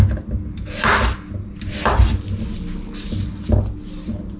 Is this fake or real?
real